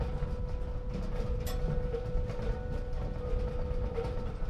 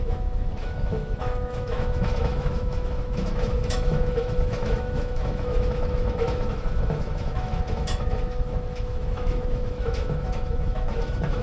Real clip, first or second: first